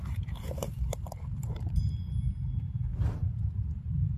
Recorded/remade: remade